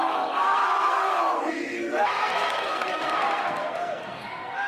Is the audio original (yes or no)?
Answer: no